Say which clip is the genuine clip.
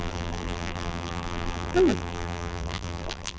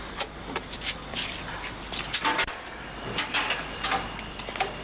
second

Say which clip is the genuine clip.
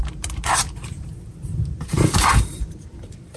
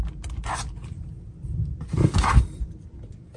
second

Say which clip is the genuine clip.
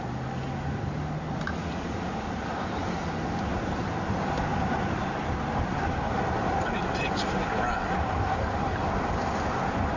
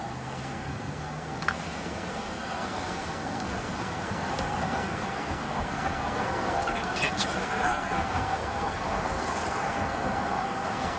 first